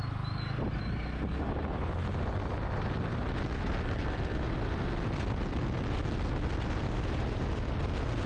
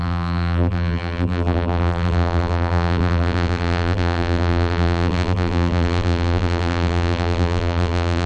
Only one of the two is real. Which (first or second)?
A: first